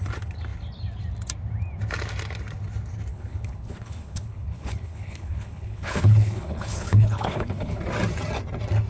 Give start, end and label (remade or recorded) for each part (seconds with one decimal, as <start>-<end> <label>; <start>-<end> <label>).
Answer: 0.0-3.1 recorded; 3.1-7.8 remade; 7.8-8.9 recorded